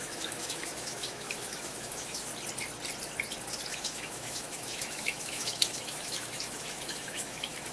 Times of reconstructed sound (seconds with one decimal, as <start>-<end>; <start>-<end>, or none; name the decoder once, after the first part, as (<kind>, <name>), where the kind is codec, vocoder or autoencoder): 0.0-2.3 (autoencoder, DAC-VAE); 3.7-7.7